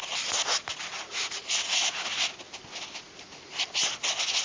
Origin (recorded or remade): recorded